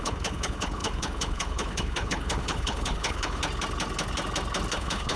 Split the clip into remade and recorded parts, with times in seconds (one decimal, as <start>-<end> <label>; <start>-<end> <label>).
0.0-3.4 remade; 3.4-4.7 recorded; 4.7-5.2 remade